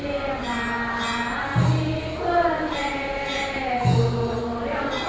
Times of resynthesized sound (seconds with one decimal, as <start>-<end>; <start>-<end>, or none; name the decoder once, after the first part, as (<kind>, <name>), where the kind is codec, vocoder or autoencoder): none